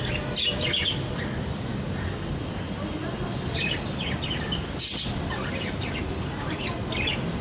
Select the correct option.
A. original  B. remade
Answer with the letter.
B